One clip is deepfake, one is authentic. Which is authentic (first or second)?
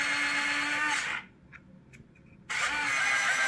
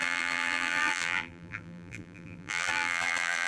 first